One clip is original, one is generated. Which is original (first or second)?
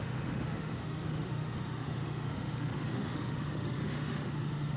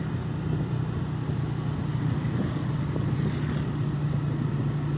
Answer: second